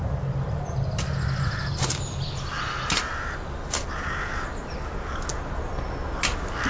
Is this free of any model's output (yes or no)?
yes